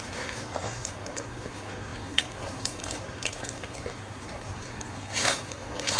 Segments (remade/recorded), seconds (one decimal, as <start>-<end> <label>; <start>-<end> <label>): 0.0-6.0 remade